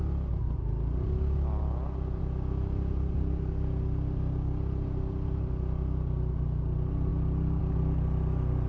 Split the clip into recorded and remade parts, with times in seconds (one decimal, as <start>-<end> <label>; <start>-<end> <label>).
0.0-8.7 recorded